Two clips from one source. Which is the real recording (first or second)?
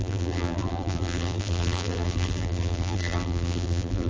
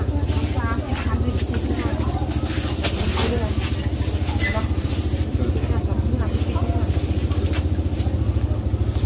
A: second